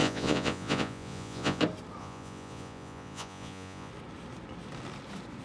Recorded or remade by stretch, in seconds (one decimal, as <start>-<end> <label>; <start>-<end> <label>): 0.0-1.6 remade; 1.6-2.0 recorded; 2.0-3.9 remade; 3.9-5.4 recorded